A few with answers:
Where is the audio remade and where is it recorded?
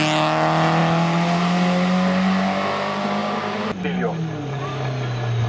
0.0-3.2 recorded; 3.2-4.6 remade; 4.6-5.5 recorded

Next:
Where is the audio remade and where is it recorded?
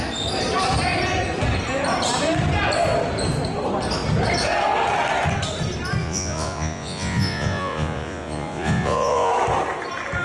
0.0-6.0 recorded; 6.0-9.3 remade; 9.3-10.2 recorded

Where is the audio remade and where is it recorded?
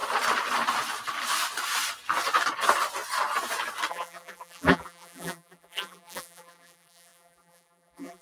0.0-3.9 recorded; 3.9-8.2 remade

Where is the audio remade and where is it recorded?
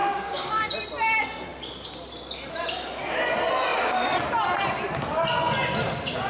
0.0-0.7 remade; 0.7-6.3 recorded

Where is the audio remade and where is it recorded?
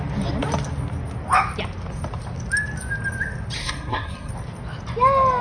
0.0-3.6 recorded; 3.6-4.3 remade; 4.3-5.4 recorded